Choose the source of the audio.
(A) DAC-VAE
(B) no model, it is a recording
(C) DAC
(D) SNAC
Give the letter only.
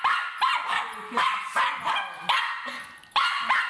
B